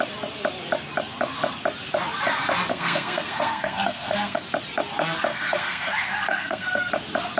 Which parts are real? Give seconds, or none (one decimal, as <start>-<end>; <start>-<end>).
0.0-2.7; 4.4-5.3; 6.9-7.4